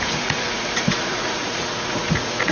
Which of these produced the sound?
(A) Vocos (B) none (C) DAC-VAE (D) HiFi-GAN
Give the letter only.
A